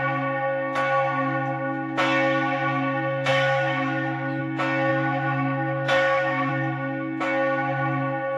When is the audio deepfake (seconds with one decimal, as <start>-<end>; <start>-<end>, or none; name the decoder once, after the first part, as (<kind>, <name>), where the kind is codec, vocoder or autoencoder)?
3.3-4.4 (autoencoder, DAC-VAE); 4.9-6.5